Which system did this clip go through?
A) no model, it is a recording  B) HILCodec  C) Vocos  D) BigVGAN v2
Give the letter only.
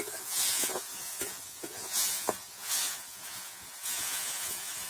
C